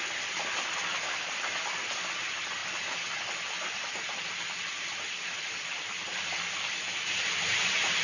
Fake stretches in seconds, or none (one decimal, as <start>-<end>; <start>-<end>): 0.0-2.6; 3.4-8.0